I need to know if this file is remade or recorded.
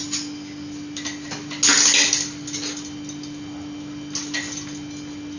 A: recorded